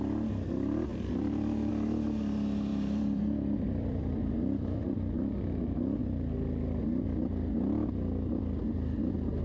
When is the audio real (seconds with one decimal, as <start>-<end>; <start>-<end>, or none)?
0.0-0.9; 1.7-2.7; 4.9-9.4